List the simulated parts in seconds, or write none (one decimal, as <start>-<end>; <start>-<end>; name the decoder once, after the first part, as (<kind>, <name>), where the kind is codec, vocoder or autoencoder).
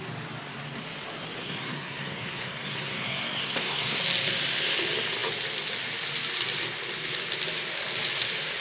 1.4-4.0 (codec, SNAC)